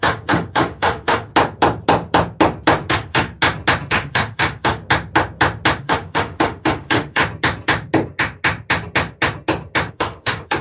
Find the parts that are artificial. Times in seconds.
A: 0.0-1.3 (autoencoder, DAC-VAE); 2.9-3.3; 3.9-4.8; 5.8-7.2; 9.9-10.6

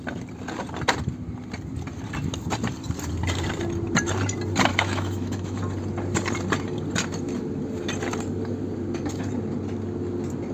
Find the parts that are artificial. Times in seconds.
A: 4.7-5.6 (autoencoder, DAC-VAE)

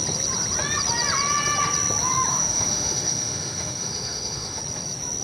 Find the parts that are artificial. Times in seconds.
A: 2.3-4.6 (autoencoder, DAC-VAE)

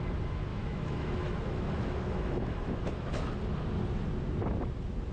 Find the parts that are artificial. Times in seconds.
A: 0.5-3.4 (autoencoder, DAC-VAE)

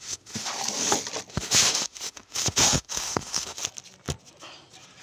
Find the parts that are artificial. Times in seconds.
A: 0.0-0.5 (autoencoder, DAC-VAE); 1.3-3.6

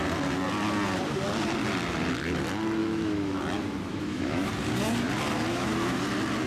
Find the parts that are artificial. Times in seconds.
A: 2.8-3.4 (autoencoder, DAC-VAE); 3.9-4.5; 5.5-6.0

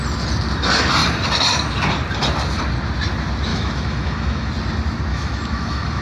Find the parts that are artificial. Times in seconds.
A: 3.5-4.5 (autoencoder, DAC-VAE); 5.1-6.0